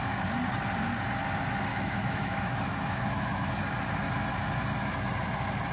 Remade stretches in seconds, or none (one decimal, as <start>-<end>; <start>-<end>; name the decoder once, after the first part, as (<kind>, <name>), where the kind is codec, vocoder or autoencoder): 1.7-3.5 (autoencoder, DAC-VAE)